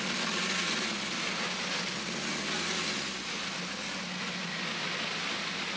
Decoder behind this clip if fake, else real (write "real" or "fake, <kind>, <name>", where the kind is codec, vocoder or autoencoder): real